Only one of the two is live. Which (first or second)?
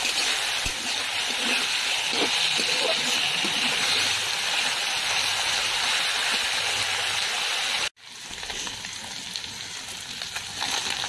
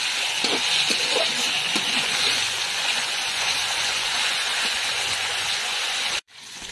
first